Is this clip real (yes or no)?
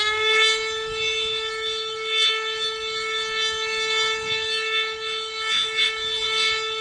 no